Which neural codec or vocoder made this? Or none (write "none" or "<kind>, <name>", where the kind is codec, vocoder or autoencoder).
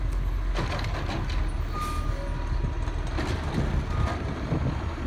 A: none